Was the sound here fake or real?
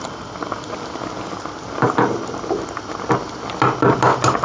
real